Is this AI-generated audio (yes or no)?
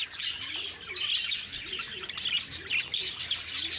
no